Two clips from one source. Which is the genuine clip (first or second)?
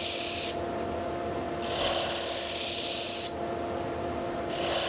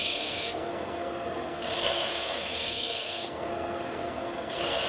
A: first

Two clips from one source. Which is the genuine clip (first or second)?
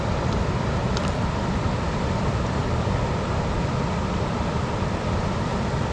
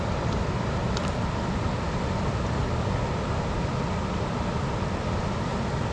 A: second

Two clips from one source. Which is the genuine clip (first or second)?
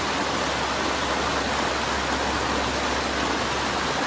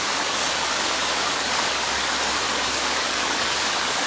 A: first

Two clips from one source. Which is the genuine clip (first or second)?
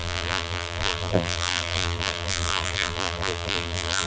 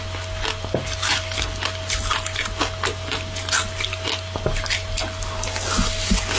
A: second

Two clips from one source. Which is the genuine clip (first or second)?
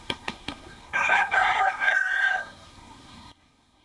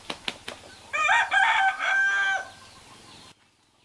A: second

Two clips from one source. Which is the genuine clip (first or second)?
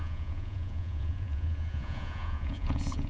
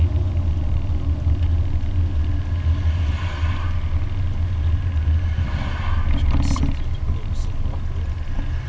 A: second